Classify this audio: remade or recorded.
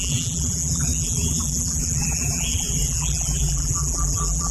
remade